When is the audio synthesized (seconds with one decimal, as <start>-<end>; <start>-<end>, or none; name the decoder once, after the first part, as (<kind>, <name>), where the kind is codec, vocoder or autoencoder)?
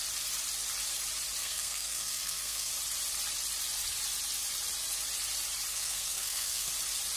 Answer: 1.4-2.7 (codec, SNAC); 5.7-6.7